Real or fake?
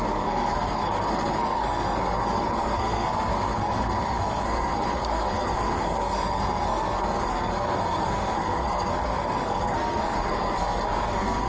fake